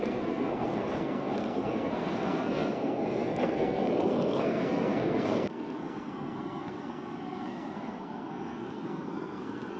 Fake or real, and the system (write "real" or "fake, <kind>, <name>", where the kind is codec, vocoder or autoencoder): fake, codec, SNAC